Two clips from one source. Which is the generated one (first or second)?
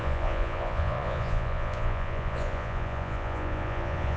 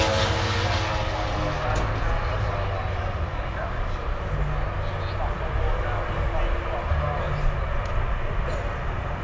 first